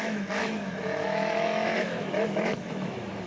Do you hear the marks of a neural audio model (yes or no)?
yes